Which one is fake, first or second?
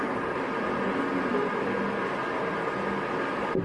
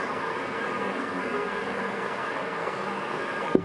second